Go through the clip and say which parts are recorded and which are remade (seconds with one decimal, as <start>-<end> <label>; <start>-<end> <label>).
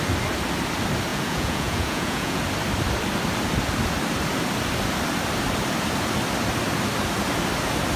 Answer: 0.0-1.1 recorded; 1.1-2.4 remade; 2.4-8.0 recorded